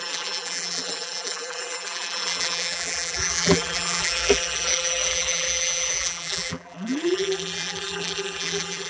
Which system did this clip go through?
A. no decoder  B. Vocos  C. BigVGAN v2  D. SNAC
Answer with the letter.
C